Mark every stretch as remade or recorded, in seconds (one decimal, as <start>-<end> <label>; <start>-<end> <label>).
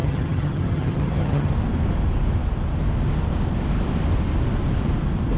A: 0.0-1.5 remade; 1.5-5.4 recorded